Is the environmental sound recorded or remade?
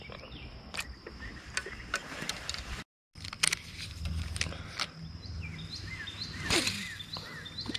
recorded